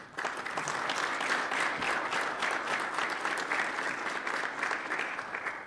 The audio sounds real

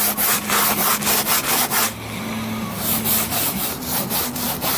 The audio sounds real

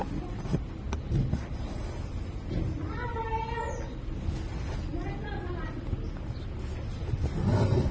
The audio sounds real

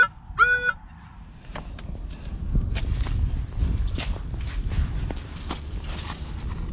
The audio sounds real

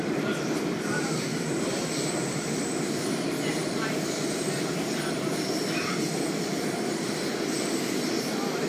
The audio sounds fake